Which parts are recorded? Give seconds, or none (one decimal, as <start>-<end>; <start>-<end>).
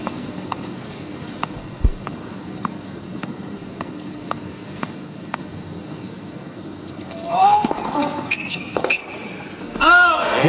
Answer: 9.0-9.6